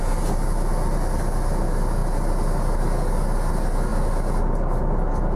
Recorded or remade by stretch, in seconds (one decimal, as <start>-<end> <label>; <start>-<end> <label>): 0.0-5.4 recorded